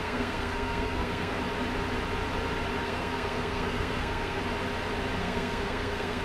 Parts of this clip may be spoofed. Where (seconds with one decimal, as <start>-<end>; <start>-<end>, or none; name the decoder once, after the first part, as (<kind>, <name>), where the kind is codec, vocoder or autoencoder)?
0.0-1.4 (codec, SNAC); 2.8-4.4; 5.2-6.2